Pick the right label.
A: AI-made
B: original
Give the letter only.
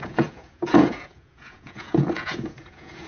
A